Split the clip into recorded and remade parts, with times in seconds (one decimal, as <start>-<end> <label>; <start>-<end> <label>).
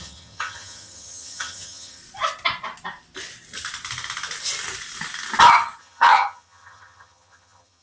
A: 0.0-2.0 remade; 2.0-5.8 recorded; 5.8-7.8 remade